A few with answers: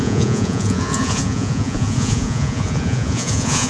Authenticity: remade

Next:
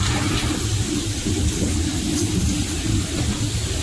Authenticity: recorded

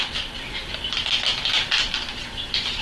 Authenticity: recorded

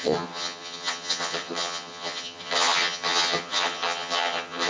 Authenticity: remade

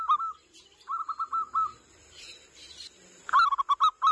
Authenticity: recorded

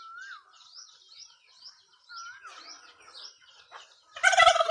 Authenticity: recorded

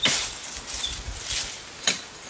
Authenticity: recorded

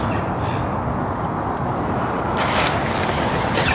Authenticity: recorded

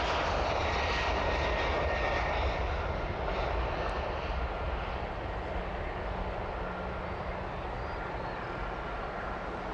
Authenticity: recorded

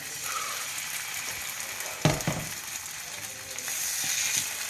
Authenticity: recorded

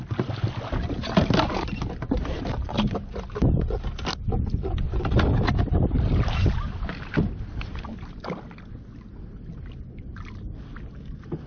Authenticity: recorded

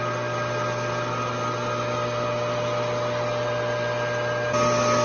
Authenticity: recorded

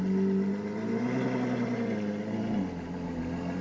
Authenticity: recorded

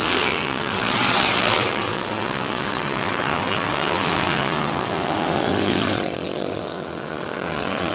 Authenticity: remade